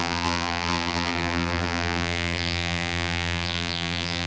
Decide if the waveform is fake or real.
fake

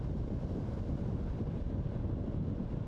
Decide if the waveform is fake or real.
real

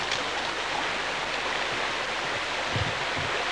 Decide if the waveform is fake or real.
real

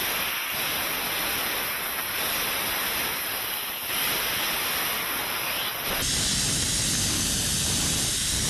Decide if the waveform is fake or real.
real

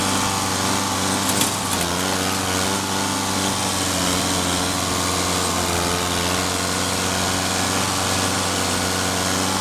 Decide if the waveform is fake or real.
real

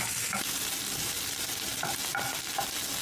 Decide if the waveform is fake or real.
real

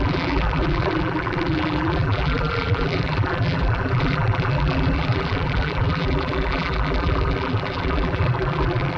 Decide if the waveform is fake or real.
fake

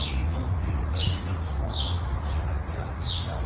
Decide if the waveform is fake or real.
fake